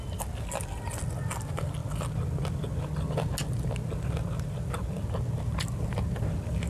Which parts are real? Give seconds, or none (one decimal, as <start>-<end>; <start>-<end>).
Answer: 0.0-6.7